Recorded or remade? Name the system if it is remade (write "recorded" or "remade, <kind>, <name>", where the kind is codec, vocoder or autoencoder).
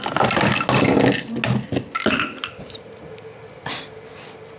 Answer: recorded